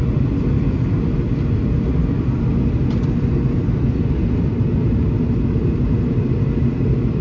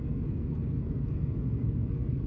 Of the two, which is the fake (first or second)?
second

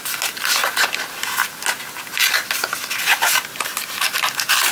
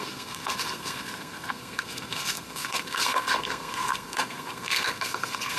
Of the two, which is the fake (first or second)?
second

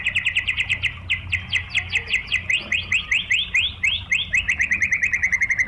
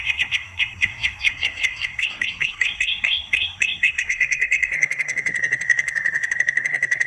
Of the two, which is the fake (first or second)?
second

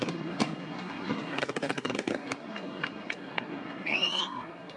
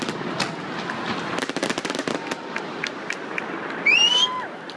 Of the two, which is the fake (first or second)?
first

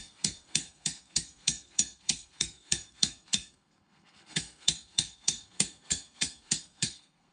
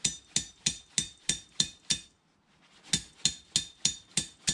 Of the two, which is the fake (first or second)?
first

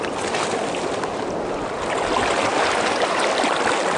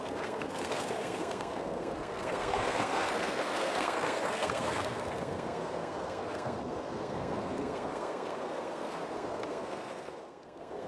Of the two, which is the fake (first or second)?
second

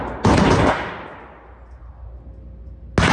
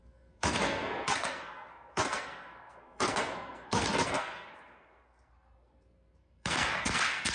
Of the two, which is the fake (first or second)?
second